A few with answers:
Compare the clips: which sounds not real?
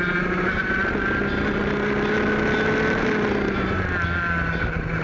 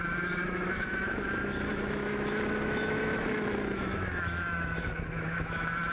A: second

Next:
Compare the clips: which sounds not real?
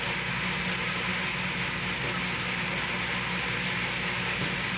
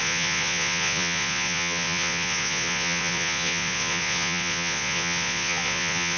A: second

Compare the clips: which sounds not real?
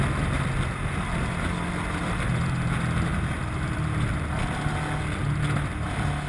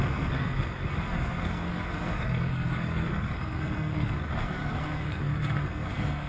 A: second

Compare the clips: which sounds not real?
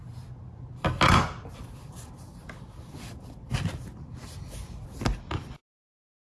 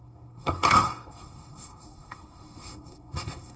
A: second